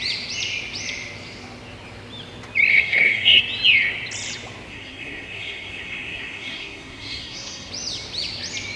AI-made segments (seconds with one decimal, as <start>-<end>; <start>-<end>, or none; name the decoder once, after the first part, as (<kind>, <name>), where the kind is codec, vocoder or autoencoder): 2.7-3.4 (codec, SNAC); 4.7-7.7